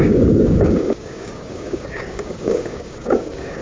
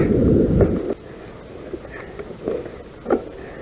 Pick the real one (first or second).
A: second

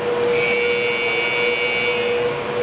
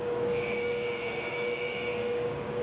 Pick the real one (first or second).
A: first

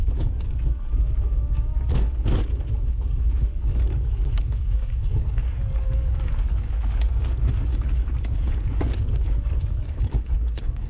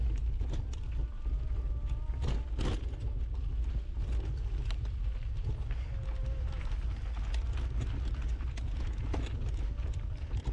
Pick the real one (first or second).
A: second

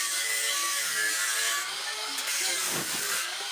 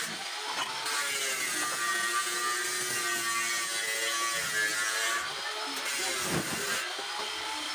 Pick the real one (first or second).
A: second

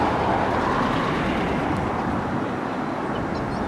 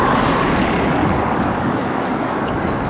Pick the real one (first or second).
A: first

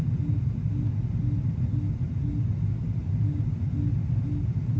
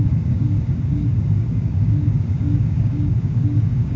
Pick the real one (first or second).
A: first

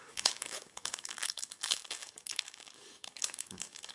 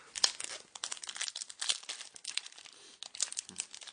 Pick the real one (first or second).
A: second